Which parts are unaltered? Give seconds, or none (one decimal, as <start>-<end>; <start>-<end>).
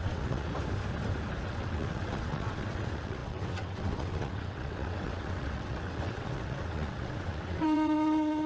0.5-1.4